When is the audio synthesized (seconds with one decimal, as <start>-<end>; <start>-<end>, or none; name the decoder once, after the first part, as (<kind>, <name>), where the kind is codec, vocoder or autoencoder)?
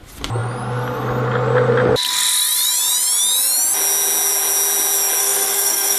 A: 5.2-6.0 (codec, SNAC)